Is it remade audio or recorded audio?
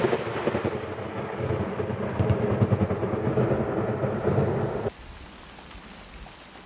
recorded